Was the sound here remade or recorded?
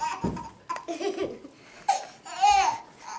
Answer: recorded